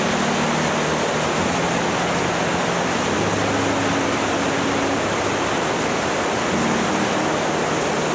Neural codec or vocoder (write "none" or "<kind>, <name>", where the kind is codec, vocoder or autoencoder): none